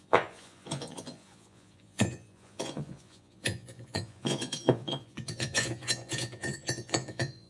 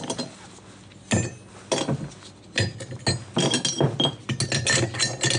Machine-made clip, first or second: first